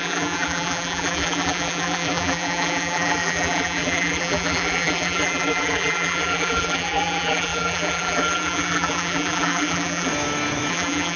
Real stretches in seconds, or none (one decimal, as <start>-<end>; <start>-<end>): 10.1-10.7